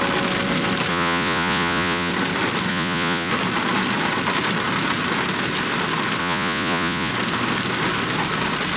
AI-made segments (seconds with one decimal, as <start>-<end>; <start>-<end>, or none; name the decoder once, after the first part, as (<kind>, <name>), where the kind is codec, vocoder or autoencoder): 0.9-2.1 (vocoder, Vocos); 2.7-3.3; 6.2-7.1